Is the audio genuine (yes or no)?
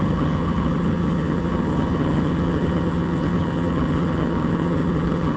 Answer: no